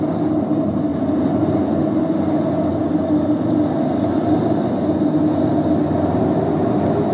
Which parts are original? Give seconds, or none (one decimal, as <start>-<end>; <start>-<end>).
0.0-0.9; 1.6-7.1

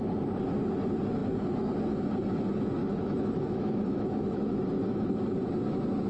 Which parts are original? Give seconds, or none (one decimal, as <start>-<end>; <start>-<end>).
0.0-2.8; 5.1-6.1

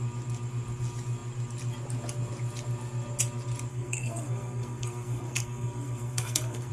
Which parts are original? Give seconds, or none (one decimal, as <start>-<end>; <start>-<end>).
0.0-3.7

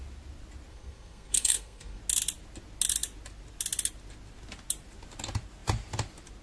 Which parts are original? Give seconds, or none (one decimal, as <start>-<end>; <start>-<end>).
0.0-0.7; 2.0-6.4